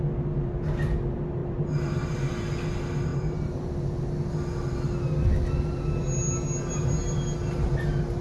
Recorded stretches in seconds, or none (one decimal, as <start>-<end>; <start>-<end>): 0.0-1.4; 2.1-3.1; 3.7-8.2